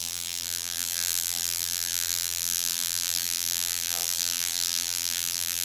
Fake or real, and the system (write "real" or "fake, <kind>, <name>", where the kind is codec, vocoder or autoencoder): fake, vocoder, BigVGAN v2